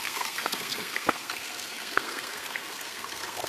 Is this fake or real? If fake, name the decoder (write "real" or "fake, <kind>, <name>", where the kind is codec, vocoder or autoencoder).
fake, codec, SNAC